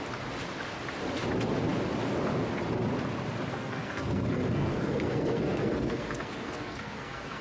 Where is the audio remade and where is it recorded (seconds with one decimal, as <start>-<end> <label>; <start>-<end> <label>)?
0.0-3.5 recorded; 3.5-7.4 remade